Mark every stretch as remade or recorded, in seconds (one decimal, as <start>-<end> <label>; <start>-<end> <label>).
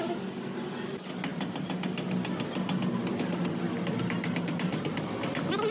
0.0-5.7 recorded